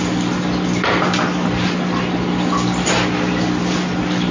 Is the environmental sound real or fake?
real